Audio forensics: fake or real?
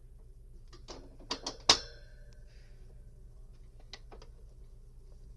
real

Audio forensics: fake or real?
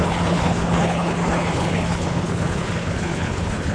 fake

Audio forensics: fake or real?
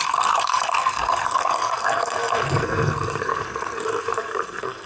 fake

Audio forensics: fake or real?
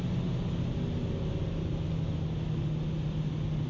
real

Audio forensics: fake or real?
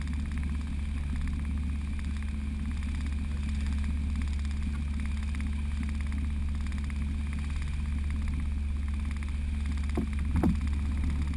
real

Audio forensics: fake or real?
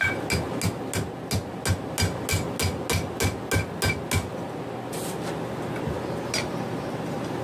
real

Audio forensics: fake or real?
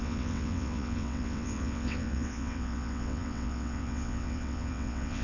fake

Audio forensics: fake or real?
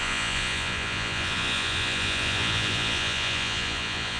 fake